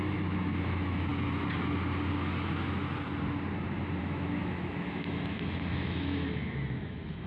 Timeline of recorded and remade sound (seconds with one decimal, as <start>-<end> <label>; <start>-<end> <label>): 0.0-1.1 remade; 1.1-4.0 recorded; 4.0-7.3 remade

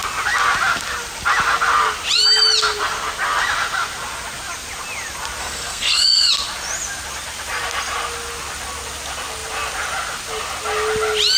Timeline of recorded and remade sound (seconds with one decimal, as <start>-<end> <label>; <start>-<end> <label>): 0.0-5.4 recorded; 5.4-6.3 remade; 6.3-11.4 recorded

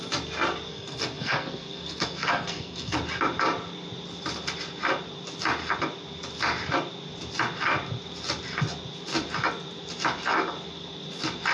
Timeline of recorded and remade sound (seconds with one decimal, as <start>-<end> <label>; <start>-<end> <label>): 0.0-0.7 recorded; 0.7-3.0 remade; 3.0-11.5 recorded